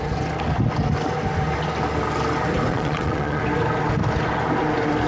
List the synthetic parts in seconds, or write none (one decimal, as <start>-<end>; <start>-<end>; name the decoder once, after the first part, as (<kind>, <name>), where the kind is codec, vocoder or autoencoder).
2.7-3.4 (vocoder, Vocos)